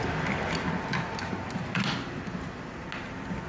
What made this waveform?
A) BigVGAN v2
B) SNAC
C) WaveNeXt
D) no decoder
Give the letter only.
D